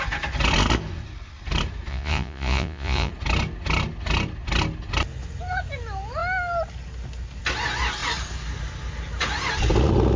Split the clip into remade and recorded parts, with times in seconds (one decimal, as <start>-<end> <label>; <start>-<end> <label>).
0.0-1.9 recorded; 1.9-3.1 remade; 3.1-10.2 recorded